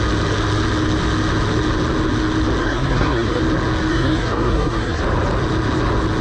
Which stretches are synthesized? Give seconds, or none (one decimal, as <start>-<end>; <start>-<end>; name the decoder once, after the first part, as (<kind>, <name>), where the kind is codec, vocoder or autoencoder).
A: 2.6-3.4 (codec, SNAC); 3.9-5.0